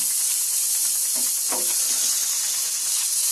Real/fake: real